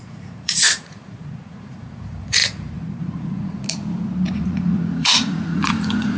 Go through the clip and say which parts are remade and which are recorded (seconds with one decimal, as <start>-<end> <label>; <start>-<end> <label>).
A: 0.0-3.6 remade; 3.6-4.3 recorded; 4.3-6.2 remade